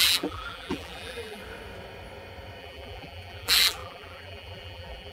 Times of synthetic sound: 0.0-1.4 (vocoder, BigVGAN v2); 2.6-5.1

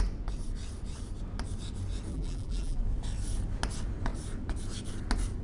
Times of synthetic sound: 2.1-2.8 (vocoder, BigVGAN v2)

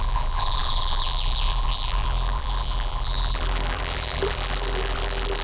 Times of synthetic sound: 0.0-5.4 (vocoder, BigVGAN v2)

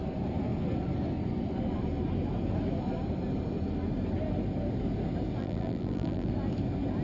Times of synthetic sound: 5.4-6.3 (vocoder, BigVGAN v2)

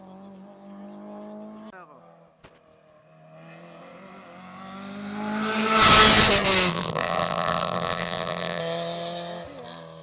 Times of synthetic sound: 6.7-8.6 (vocoder, BigVGAN v2)

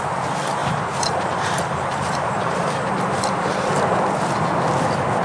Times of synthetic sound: 0.6-3.7 (vocoder, BigVGAN v2)